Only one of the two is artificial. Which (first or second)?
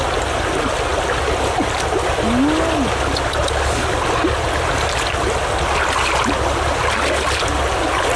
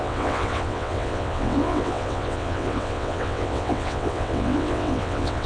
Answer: second